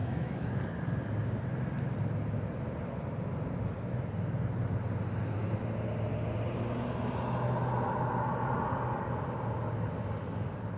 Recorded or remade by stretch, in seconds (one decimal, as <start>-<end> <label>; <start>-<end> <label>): 0.0-0.6 remade; 0.6-10.8 recorded